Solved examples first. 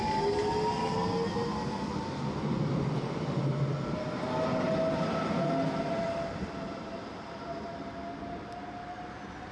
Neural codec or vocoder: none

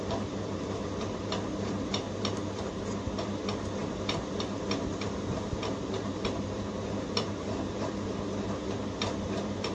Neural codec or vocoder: none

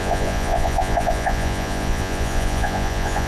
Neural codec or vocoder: vocoder, Vocos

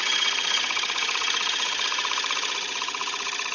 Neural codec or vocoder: vocoder, Vocos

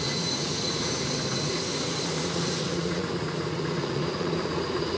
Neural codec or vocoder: vocoder, Vocos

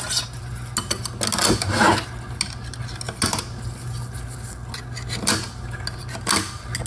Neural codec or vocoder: none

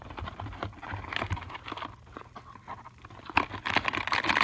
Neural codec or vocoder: none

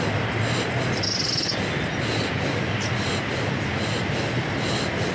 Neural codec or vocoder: none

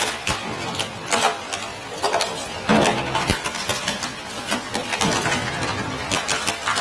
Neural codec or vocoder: none